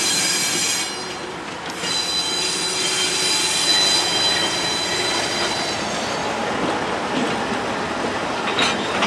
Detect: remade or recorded recorded